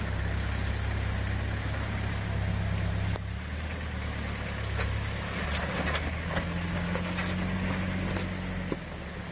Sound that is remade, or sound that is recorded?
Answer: recorded